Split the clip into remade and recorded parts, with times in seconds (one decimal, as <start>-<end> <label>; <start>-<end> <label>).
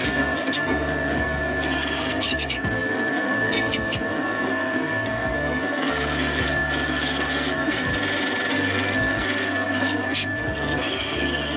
0.0-7.9 remade; 7.9-8.5 recorded; 8.5-11.6 remade